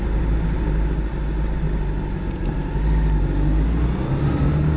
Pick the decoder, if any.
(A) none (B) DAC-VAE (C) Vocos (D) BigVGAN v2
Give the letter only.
A